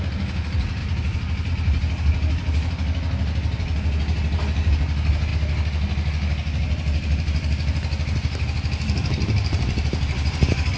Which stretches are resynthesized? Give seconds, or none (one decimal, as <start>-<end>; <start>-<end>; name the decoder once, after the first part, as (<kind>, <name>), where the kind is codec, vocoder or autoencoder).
0.8-1.5 (vocoder, BigVGAN v2)